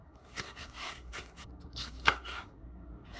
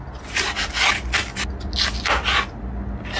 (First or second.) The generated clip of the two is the first